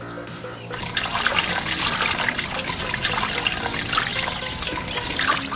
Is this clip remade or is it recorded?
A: recorded